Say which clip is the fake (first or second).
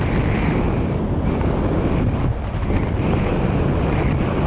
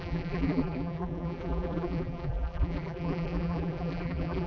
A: second